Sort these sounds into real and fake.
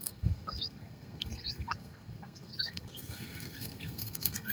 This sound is fake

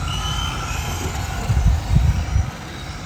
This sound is real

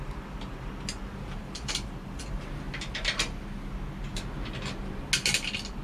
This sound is real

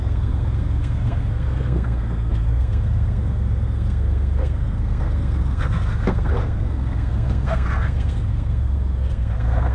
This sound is fake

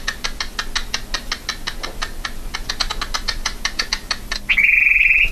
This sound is real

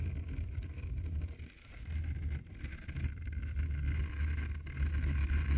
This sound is real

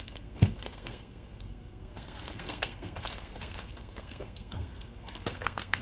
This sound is fake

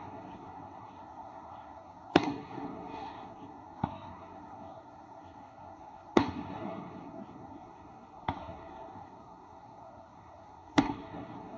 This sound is fake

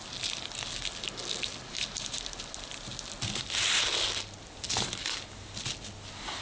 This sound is real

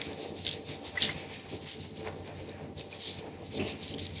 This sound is real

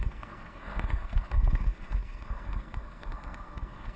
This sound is fake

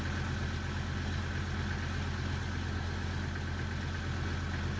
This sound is real